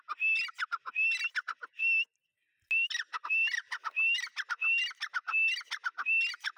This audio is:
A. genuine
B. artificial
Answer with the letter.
A